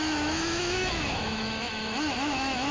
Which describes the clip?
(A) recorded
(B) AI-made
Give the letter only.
B